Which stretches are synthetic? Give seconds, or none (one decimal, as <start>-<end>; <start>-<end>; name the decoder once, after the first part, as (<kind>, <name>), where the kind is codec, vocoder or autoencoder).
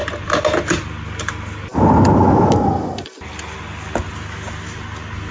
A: none